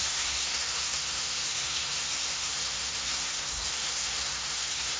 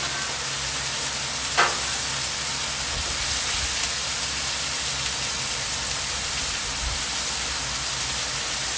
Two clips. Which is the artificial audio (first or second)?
first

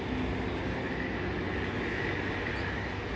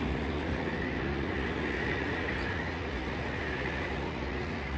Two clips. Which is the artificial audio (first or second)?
second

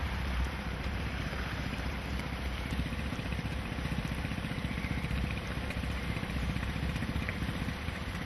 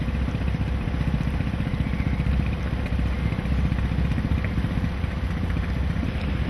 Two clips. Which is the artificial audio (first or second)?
first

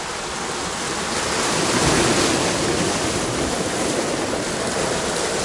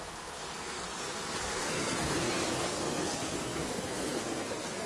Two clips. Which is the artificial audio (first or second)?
second